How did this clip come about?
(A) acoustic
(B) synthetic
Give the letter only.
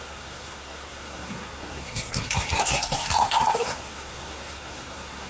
B